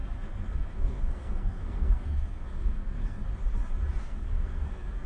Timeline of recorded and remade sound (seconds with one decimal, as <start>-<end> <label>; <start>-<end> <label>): 0.0-3.2 remade; 3.2-4.0 recorded; 4.0-5.1 remade